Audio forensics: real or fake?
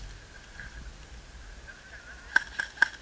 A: real